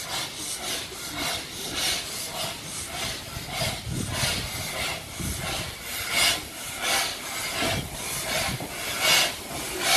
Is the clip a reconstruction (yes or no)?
no